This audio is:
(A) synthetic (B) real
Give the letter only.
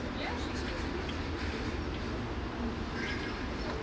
B